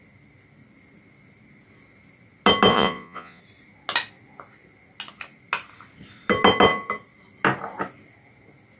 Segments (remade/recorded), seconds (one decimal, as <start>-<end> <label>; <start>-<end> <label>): 0.0-2.7 recorded; 2.7-3.4 remade; 3.4-8.8 recorded